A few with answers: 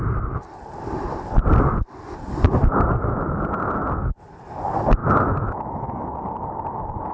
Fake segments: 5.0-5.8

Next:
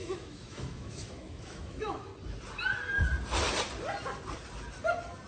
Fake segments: 0.0-2.1

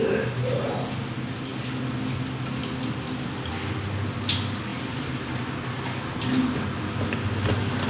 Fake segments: none

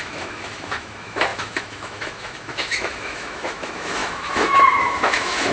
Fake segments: 0.0-5.5

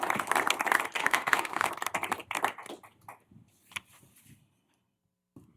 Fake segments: 1.0-1.7